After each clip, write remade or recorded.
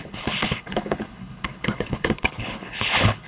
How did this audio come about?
remade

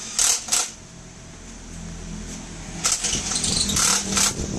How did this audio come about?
recorded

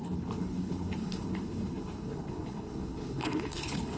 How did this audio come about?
remade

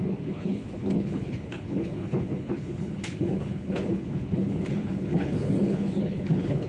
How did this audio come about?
remade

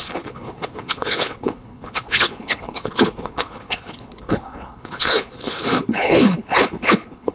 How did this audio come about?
remade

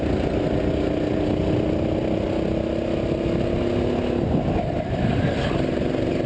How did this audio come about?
recorded